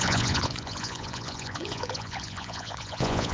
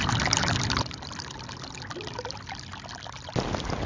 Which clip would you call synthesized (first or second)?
first